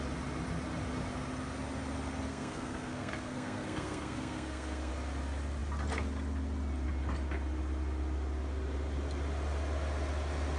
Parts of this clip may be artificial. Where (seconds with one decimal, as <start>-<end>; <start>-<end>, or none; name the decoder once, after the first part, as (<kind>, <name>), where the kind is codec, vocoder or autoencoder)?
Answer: 2.3-4.9 (codec, SNAC)